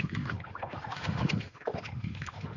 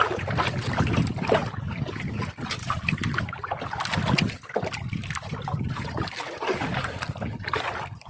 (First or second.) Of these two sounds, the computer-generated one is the first